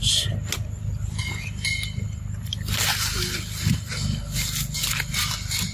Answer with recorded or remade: recorded